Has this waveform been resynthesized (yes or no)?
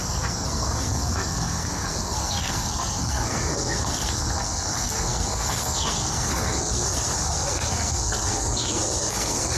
yes